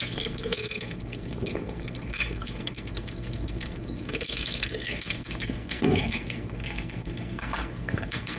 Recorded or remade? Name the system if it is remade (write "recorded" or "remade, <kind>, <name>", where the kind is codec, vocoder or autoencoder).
remade, codec, SNAC